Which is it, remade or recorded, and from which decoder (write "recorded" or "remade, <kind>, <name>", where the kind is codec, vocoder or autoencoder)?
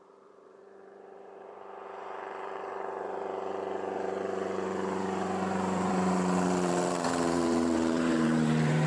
remade, vocoder, BigVGAN v2